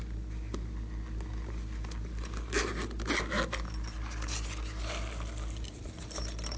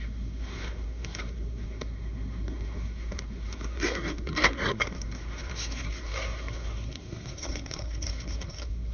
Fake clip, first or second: second